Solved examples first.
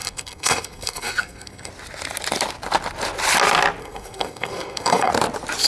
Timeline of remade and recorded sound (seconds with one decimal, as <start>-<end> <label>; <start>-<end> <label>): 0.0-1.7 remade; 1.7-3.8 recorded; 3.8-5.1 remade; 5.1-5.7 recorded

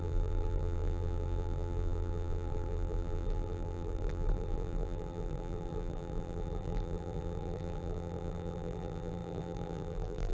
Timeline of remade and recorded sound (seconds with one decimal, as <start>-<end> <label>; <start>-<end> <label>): 0.0-10.3 remade

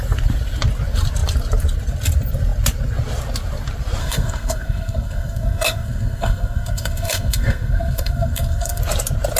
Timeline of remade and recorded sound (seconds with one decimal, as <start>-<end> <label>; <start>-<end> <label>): 0.0-4.0 recorded; 4.0-8.8 remade; 8.8-9.4 recorded

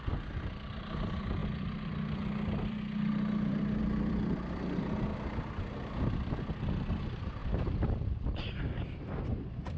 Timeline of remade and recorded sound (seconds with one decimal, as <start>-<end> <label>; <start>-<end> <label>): 0.0-5.1 remade; 5.1-6.8 recorded; 6.8-9.8 remade

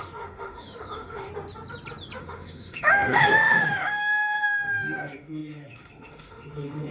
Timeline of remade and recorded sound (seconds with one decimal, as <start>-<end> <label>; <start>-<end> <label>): 0.0-1.3 remade; 1.3-2.2 recorded; 2.2-6.9 remade

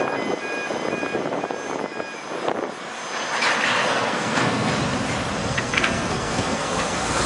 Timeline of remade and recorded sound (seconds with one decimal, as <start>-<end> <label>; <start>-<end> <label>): 0.0-3.8 recorded; 3.8-4.7 remade; 4.7-5.4 recorded; 5.4-7.3 remade

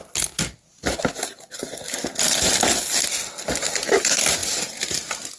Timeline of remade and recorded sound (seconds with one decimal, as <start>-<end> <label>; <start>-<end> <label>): 0.0-5.4 recorded